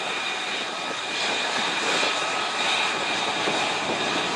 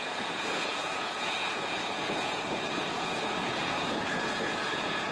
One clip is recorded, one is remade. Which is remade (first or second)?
second